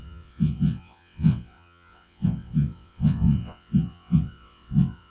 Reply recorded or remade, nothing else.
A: remade